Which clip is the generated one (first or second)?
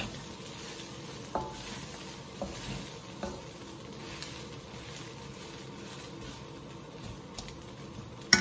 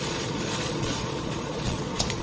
second